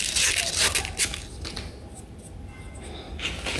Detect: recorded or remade recorded